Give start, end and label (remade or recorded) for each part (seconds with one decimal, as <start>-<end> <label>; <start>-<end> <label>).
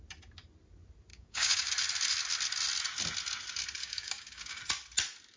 0.0-1.1 recorded; 1.1-1.7 remade; 1.7-3.8 recorded; 3.8-4.6 remade; 4.6-5.4 recorded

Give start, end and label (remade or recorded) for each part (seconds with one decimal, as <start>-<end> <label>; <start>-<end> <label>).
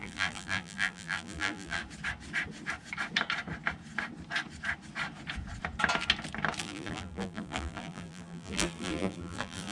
0.0-1.8 remade; 1.8-6.6 recorded; 6.6-9.7 remade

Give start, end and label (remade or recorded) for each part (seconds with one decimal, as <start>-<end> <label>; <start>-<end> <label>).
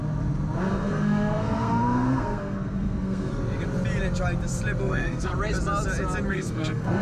0.0-0.7 recorded; 0.7-3.3 remade; 3.3-4.8 recorded; 4.8-5.3 remade; 5.3-6.3 recorded; 6.3-7.0 remade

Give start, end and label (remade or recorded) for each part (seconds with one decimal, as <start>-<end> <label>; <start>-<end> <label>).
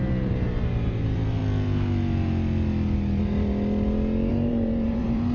0.0-1.4 remade; 1.4-4.3 recorded; 4.3-5.3 remade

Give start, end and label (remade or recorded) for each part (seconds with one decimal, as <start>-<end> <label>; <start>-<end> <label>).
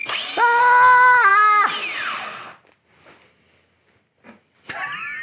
0.0-5.2 recorded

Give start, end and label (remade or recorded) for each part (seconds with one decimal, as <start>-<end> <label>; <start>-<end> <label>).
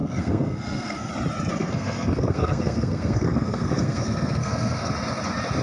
0.0-1.1 remade; 1.1-1.5 recorded; 1.5-4.9 remade; 4.9-5.6 recorded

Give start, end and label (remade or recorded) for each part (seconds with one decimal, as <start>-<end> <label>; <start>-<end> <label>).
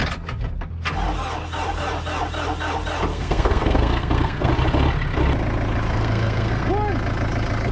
0.0-3.1 recorded; 3.1-4.5 remade; 4.5-5.9 recorded; 5.9-6.7 remade; 6.7-7.7 recorded